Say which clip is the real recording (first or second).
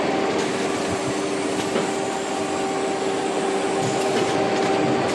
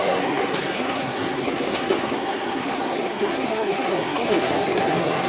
first